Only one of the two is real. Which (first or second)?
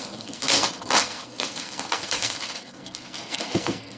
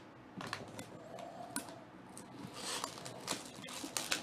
second